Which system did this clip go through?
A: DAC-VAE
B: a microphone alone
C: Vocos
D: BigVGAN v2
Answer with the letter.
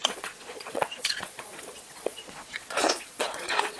C